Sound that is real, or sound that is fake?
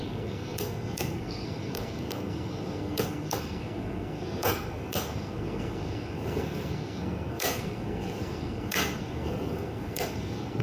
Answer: fake